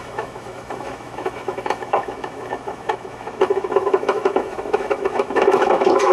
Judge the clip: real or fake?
fake